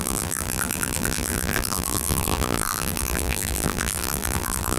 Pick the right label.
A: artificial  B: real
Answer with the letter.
A